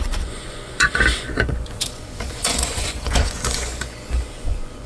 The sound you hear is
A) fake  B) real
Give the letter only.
A